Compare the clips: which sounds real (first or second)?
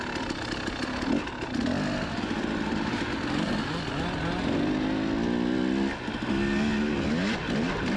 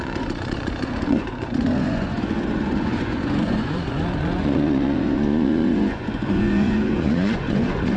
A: first